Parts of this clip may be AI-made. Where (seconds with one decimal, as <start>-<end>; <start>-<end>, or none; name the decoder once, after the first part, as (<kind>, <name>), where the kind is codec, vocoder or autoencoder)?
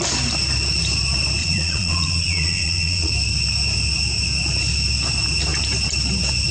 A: 1.4-3.1 (vocoder, Vocos)